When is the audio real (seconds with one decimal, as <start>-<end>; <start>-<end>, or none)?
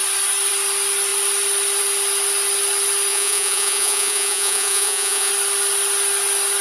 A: 0.0-3.1; 5.3-6.6